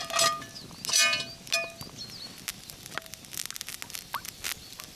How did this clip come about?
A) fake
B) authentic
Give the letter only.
B